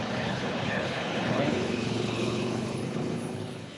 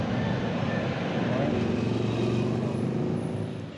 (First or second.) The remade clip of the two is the first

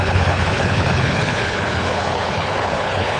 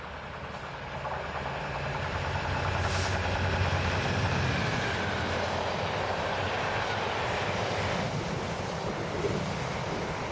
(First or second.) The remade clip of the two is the first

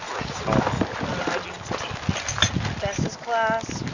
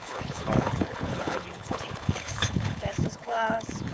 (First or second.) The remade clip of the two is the second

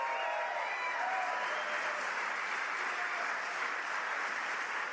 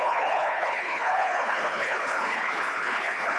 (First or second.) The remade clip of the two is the second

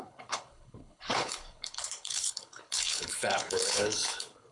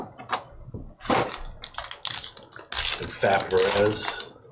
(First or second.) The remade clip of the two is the first